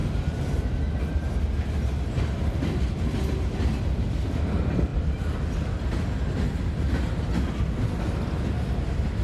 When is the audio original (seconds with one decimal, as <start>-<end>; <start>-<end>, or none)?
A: 0.0-4.9; 5.8-9.2